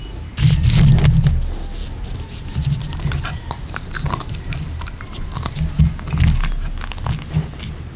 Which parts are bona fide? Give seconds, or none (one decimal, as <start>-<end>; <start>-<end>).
0.0-1.8; 5.8-8.0